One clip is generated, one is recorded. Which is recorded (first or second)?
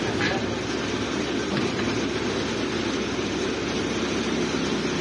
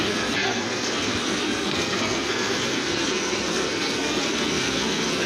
first